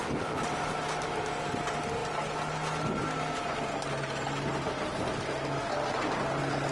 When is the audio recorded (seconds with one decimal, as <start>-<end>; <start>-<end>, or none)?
0.0-6.7